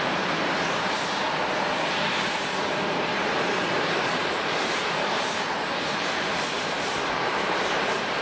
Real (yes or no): no